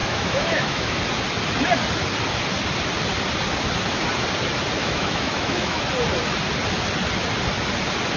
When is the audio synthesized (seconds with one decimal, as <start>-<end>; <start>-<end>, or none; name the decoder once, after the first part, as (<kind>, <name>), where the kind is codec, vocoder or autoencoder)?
0.0-1.0 (autoencoder, DAC-VAE); 4.8-5.8